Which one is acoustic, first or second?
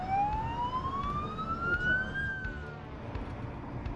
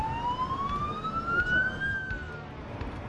first